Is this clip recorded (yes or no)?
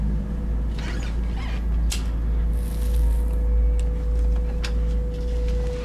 yes